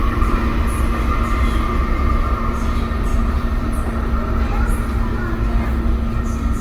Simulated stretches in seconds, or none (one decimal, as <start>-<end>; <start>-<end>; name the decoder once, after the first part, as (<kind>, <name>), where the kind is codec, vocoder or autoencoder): 3.1-3.6 (vocoder, BigVGAN v2)